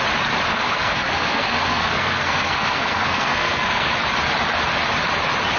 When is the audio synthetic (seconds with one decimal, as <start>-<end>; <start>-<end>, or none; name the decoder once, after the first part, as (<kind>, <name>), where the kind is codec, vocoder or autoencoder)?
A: 0.5-3.9 (codec, SNAC)